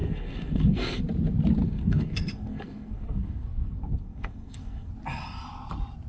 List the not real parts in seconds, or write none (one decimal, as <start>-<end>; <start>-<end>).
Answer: 0.0-1.0; 1.6-4.9